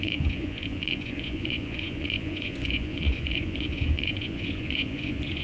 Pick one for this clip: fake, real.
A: fake